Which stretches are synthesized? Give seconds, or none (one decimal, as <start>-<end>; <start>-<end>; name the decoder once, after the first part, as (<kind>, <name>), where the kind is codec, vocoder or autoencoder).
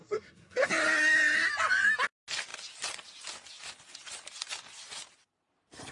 0.0-0.7 (codec, SNAC)